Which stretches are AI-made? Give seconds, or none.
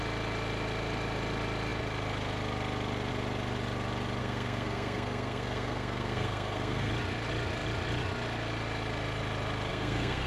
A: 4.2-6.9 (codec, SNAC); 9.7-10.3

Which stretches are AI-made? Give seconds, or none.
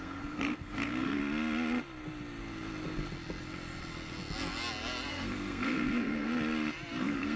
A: 0.0-1.2 (codec, SNAC); 5.1-6.3; 7.0-7.4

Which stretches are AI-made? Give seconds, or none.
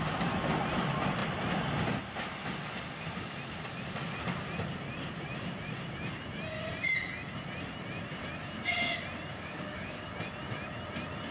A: 9.3-10.1 (codec, DAC)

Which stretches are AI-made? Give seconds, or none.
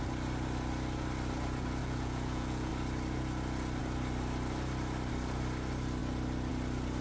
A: 1.8-2.7 (vocoder, Vocos)